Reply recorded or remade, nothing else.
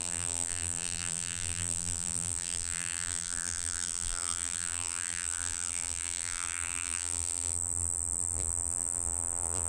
remade